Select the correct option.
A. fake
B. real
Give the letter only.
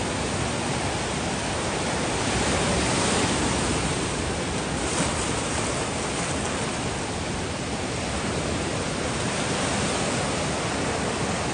B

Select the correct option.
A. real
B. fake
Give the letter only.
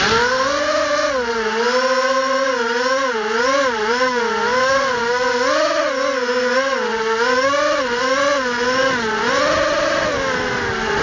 A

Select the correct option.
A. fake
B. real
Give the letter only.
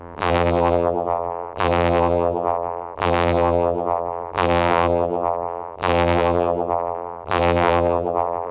A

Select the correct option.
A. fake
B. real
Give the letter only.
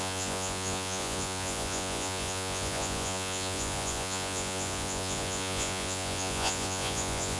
A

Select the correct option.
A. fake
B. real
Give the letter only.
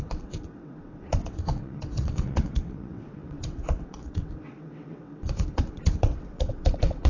A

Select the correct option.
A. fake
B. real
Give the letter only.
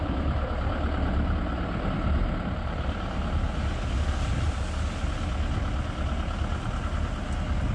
B